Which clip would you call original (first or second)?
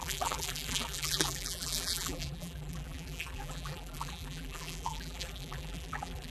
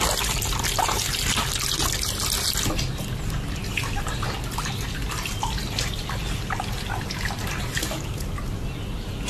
second